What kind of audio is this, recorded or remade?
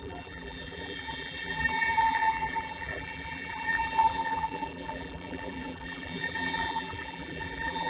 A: remade